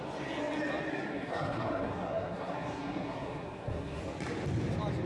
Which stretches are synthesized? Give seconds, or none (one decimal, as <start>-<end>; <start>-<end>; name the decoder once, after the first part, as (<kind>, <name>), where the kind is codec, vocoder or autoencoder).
0.9-4.0 (codec, SNAC)